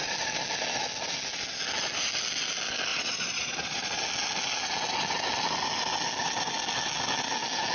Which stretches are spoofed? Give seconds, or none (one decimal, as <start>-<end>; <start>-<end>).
2.9-4.0